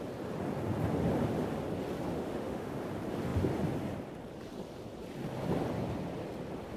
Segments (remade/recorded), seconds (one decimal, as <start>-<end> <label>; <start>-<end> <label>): 0.0-2.1 recorded; 2.1-2.8 remade; 2.8-6.8 recorded